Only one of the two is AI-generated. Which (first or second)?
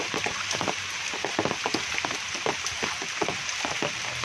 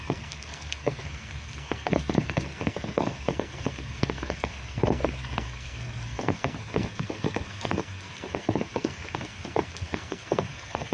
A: second